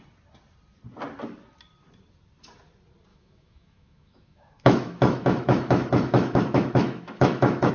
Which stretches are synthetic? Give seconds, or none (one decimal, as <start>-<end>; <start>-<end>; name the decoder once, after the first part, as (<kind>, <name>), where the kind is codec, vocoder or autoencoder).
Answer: 3.1-7.7 (autoencoder, DAC-VAE)